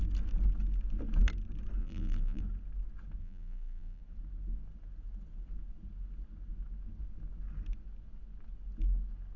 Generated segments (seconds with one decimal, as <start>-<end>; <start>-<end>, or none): 1.8-2.4; 3.2-4.0